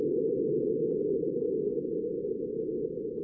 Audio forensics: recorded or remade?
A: recorded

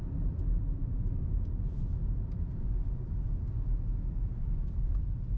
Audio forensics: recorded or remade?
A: recorded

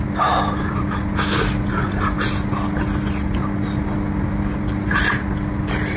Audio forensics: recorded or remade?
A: recorded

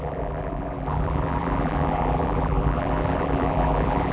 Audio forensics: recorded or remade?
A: remade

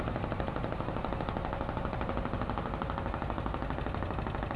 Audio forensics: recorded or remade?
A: recorded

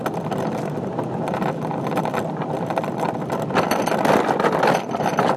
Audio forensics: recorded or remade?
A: recorded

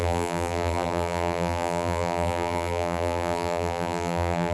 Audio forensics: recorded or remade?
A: remade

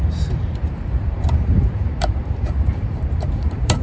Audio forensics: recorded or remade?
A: remade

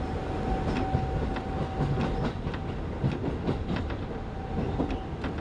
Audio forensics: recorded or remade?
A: recorded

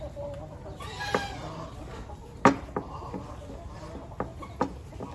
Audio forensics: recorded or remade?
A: recorded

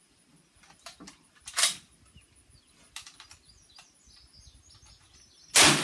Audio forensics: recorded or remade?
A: recorded